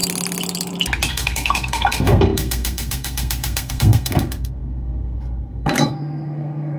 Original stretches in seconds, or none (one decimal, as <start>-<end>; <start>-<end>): 0.0-1.1